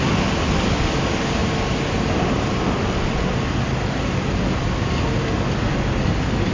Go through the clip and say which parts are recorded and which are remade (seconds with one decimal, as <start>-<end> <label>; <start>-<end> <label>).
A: 0.0-6.5 recorded